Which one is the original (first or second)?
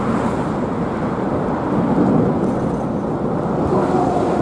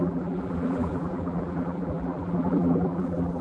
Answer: first